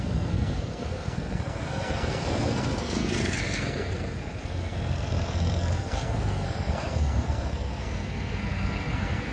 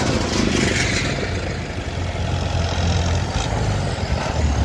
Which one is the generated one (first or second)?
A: first